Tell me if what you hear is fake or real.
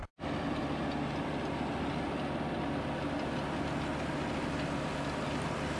real